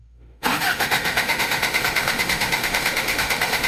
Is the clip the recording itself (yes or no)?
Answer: no